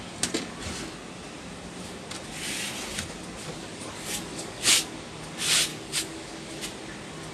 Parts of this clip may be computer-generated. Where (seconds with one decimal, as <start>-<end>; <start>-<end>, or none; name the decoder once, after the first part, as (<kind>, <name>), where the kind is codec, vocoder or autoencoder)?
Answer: 3.6-4.7 (codec, DAC); 5.7-6.5